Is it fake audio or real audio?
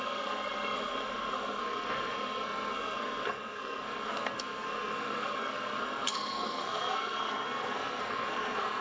fake